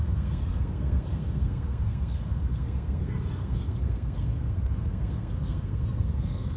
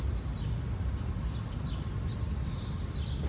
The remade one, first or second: first